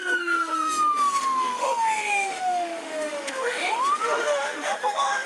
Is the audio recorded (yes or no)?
no